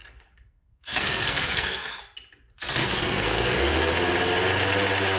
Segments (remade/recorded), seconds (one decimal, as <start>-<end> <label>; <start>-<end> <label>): 0.0-2.0 remade; 2.0-2.8 recorded; 2.8-3.9 remade; 3.9-5.2 recorded